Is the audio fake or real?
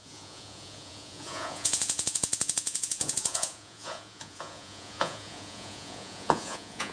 fake